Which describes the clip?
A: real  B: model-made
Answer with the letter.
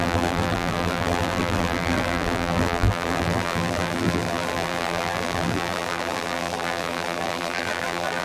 B